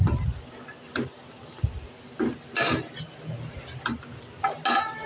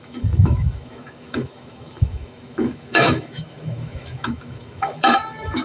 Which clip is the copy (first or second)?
second